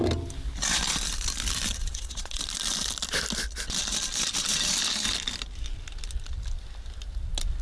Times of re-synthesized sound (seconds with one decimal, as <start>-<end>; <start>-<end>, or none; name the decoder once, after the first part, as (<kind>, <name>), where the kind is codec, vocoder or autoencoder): 1.8-2.4 (vocoder, Vocos)